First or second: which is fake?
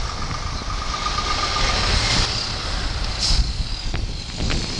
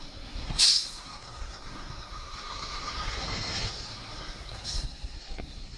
second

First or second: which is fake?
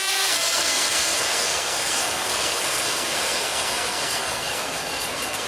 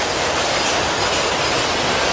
first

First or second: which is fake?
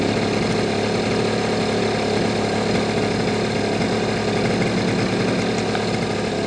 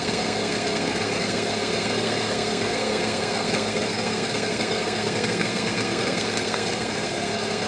second